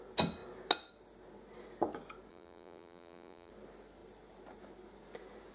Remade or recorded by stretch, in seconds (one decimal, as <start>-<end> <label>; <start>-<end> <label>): 0.0-2.3 recorded; 2.3-3.5 remade; 3.5-5.5 recorded